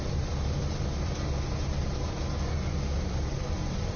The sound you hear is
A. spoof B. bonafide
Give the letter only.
B